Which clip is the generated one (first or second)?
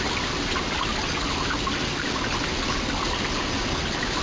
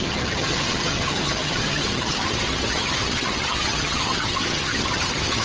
second